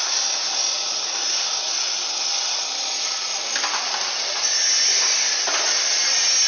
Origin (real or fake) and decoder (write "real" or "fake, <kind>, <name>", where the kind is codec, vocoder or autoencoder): real